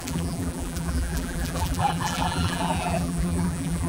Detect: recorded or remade remade